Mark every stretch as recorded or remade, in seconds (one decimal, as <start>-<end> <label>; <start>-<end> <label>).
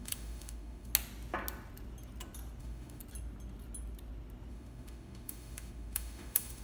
0.0-0.9 remade; 0.9-2.6 recorded; 2.6-3.0 remade; 3.0-4.5 recorded; 4.5-6.6 remade